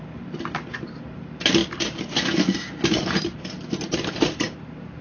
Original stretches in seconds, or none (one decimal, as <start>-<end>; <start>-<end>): 0.0-5.0